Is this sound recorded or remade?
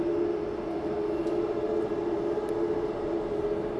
recorded